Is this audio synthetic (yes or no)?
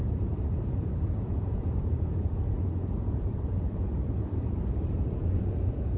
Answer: yes